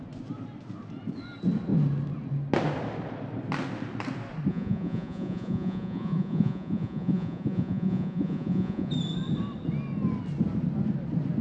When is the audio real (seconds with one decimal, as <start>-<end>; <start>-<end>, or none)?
0.0-4.5; 8.9-11.4